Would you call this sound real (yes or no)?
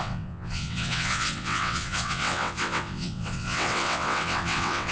no